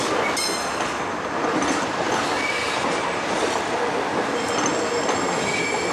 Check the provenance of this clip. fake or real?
real